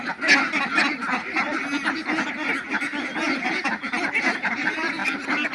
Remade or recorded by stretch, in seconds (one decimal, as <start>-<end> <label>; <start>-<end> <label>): 0.0-5.0 recorded; 5.0-5.5 remade